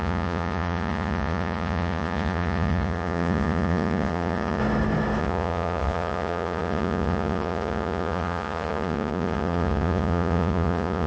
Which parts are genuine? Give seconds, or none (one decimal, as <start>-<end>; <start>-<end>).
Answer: 4.6-5.2